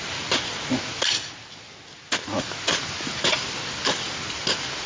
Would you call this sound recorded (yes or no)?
yes